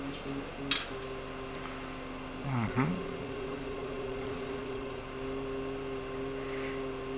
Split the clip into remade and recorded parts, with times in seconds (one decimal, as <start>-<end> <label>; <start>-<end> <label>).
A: 0.0-2.4 recorded; 2.4-5.0 remade; 5.0-7.2 recorded